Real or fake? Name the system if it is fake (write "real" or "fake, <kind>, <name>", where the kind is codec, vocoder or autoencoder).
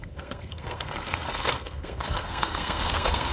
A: fake, codec, SNAC